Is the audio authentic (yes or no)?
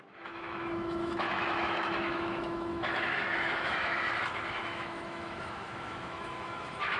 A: no